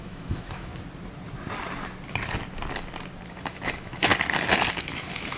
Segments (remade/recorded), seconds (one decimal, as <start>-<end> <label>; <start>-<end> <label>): 0.0-0.7 remade; 0.7-3.3 recorded; 3.3-4.1 remade; 4.1-4.7 recorded; 4.7-5.4 remade